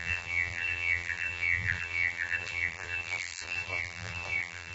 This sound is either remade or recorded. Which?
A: remade